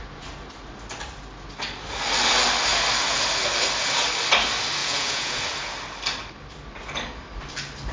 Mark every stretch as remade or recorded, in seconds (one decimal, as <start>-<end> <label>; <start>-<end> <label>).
0.0-4.8 recorded; 4.8-5.4 remade; 5.4-7.9 recorded